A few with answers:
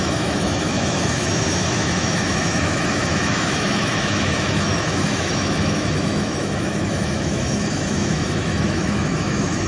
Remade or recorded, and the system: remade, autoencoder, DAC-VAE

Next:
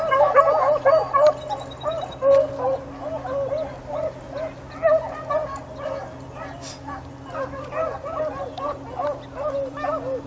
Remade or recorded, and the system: recorded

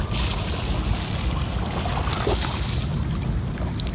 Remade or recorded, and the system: recorded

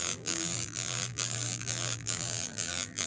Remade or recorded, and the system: remade, vocoder, BigVGAN v2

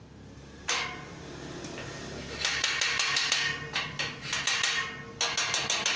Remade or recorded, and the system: recorded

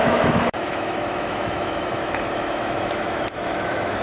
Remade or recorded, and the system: remade, autoencoder, DAC-VAE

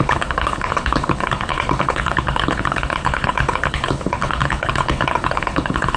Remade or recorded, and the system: remade, codec, HILCodec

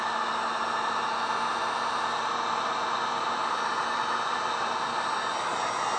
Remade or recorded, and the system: recorded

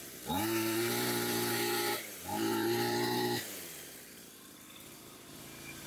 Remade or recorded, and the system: remade, vocoder, BigVGAN v2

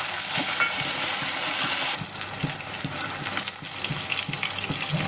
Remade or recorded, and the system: recorded